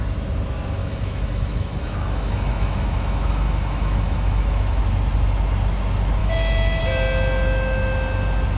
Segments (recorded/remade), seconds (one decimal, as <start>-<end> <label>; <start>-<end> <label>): 0.0-0.8 recorded; 0.8-4.8 remade; 4.8-6.2 recorded; 6.2-6.8 remade; 6.8-8.6 recorded